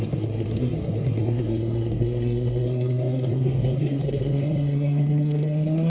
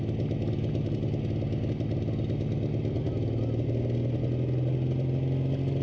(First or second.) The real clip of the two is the second